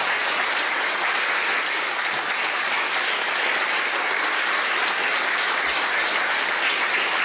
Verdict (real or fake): real